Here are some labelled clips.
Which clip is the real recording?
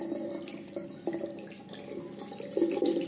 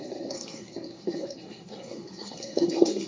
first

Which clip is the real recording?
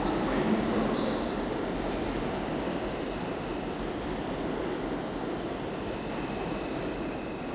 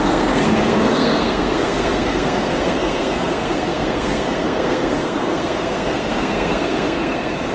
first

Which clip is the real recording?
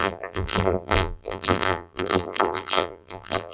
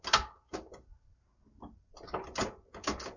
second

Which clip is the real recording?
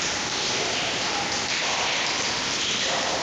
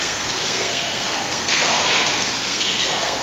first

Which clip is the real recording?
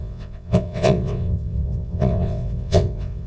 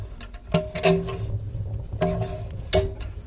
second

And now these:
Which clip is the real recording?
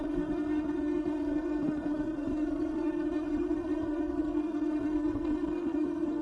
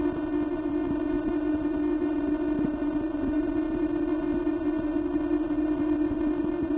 second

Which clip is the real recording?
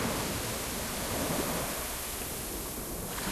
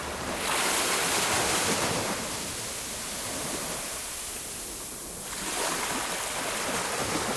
first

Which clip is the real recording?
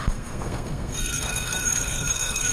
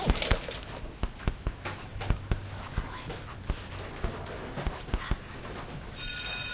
second